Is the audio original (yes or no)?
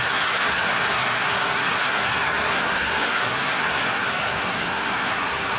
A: no